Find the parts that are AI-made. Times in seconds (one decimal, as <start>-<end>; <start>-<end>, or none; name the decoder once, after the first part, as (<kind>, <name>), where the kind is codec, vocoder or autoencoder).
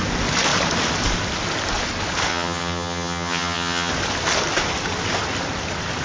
2.3-3.9 (vocoder, HiFi-GAN)